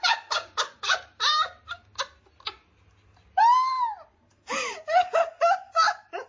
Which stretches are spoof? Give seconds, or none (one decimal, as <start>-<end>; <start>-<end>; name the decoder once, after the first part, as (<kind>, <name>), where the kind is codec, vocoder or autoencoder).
0.0-1.9 (vocoder, BigVGAN v2); 5.4-6.3